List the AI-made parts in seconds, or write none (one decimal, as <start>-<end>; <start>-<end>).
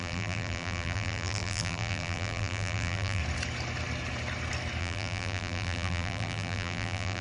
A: 0.0-3.2; 4.8-7.2